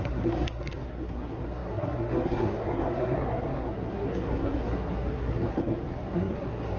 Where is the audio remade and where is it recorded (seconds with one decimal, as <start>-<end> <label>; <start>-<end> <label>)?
0.0-6.8 remade